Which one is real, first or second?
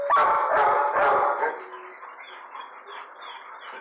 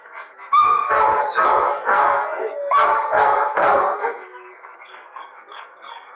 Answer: first